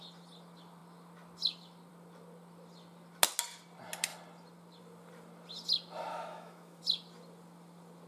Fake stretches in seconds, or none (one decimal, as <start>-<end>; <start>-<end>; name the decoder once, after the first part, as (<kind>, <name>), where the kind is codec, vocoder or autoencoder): 6.1-6.8 (autoencoder, DAC-VAE)